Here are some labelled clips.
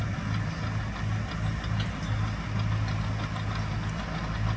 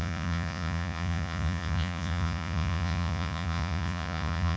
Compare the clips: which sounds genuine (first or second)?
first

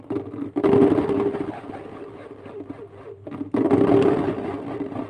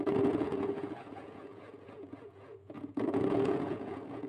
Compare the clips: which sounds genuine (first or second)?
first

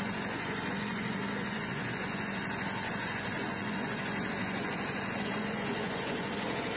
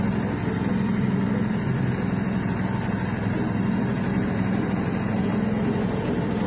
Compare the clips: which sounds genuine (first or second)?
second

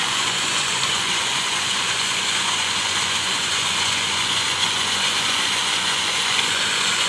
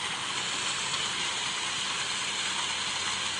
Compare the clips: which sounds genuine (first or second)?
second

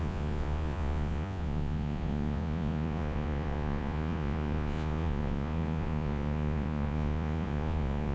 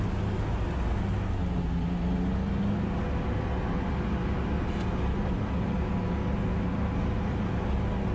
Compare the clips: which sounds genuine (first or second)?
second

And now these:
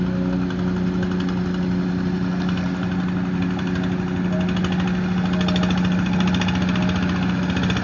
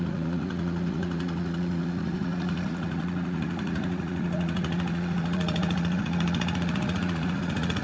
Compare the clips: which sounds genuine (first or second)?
first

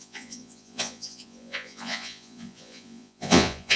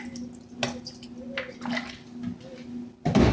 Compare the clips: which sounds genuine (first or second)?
second